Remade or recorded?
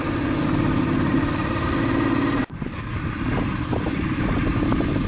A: recorded